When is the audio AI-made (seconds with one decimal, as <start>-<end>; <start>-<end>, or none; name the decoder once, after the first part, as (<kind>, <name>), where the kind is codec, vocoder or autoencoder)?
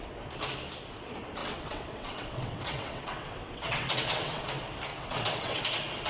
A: 1.4-4.4 (vocoder, WaveNeXt); 4.9-5.6